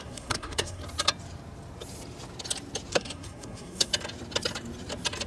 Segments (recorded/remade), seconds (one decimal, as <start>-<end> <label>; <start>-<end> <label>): 0.0-0.8 remade; 0.8-2.9 recorded; 2.9-3.9 remade; 3.9-5.3 recorded